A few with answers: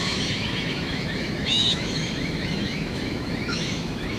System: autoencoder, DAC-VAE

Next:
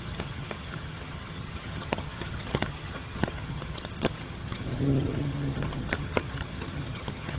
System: vocoder, HiFi-GAN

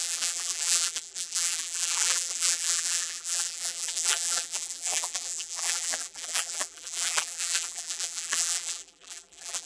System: vocoder, BigVGAN v2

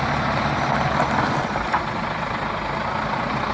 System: none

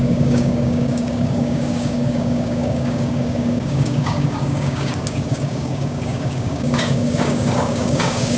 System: codec, DAC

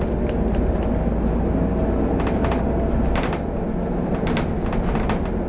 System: none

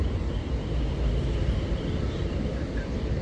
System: none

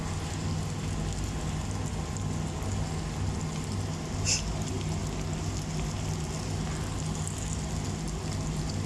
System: none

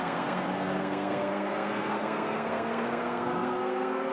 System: codec, SNAC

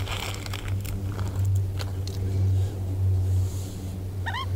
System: none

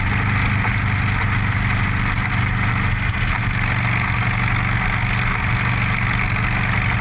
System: none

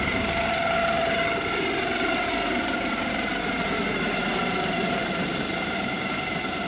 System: vocoder, BigVGAN v2